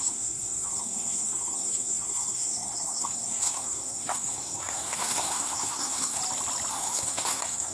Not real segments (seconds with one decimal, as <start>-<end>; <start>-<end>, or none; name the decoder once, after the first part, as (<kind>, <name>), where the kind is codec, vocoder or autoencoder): 0.0-6.2 (codec, SNAC); 6.7-7.7